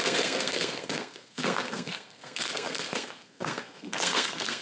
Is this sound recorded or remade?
remade